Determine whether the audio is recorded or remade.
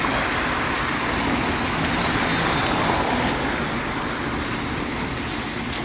recorded